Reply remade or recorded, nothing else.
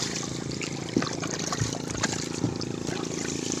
recorded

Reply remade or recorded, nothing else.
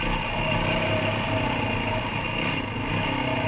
recorded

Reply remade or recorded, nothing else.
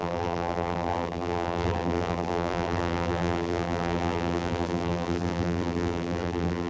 remade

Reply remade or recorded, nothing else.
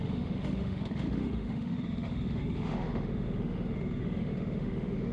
remade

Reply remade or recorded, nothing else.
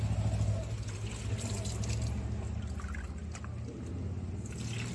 recorded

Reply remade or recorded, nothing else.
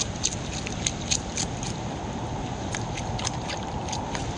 recorded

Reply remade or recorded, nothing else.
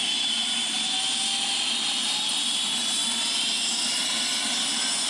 recorded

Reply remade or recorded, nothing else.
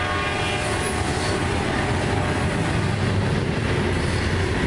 recorded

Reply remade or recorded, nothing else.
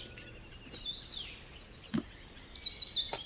recorded